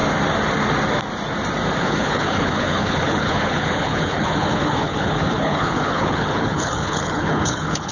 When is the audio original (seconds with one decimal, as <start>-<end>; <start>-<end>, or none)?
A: 0.0-1.8